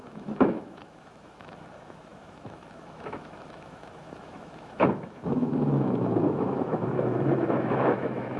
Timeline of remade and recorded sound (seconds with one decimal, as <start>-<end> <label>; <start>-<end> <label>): 0.0-8.4 remade